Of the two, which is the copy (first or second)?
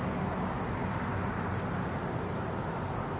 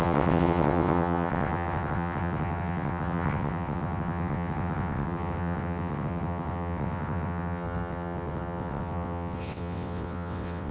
second